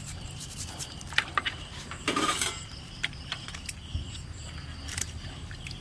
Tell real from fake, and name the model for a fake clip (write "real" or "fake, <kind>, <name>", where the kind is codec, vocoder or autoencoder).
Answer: fake, vocoder, BigVGAN v2